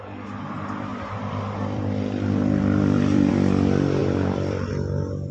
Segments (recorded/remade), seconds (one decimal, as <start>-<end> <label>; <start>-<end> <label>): 0.0-0.9 recorded; 0.9-3.3 remade; 3.3-4.0 recorded; 4.0-4.7 remade; 4.7-5.3 recorded